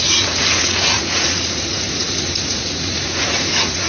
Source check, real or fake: fake